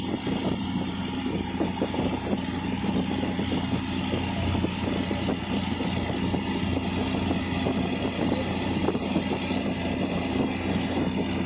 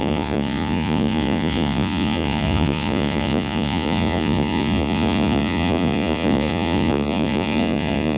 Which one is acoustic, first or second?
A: first